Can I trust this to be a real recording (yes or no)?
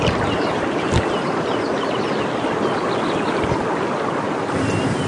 yes